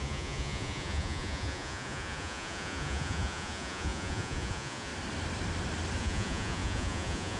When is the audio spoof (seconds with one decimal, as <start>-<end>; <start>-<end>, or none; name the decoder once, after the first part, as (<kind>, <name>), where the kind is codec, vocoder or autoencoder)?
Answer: 0.0-4.9 (vocoder, Vocos); 6.0-7.4